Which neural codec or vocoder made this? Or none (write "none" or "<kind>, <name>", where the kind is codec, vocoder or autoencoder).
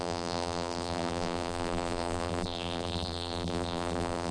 vocoder, BigVGAN v2